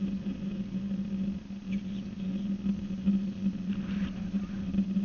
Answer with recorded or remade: recorded